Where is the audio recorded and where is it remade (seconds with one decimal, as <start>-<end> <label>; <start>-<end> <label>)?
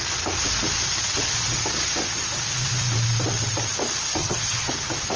0.0-4.2 recorded; 4.2-4.7 remade; 4.7-5.2 recorded